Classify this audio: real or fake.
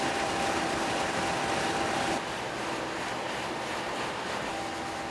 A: real